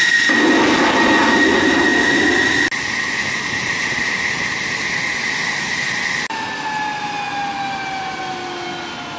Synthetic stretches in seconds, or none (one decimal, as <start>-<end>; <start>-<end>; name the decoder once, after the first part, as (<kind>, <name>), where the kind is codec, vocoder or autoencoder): none